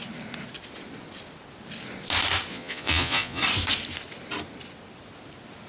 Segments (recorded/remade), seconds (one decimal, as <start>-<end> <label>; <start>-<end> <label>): 0.0-2.5 recorded; 2.5-3.4 remade; 3.4-5.7 recorded